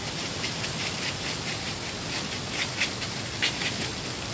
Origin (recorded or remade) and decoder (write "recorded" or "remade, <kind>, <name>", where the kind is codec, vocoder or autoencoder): recorded